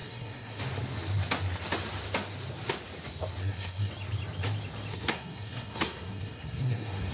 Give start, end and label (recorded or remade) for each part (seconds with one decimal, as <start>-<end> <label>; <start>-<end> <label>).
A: 0.0-0.6 remade; 0.6-3.4 recorded; 3.4-3.9 remade; 3.9-4.9 recorded; 4.9-7.1 remade